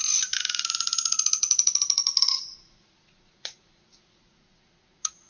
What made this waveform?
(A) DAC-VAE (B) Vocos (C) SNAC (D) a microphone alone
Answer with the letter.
B